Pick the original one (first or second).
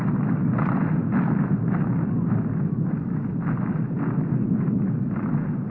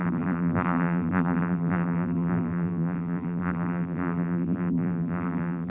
first